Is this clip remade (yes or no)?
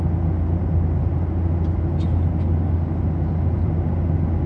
no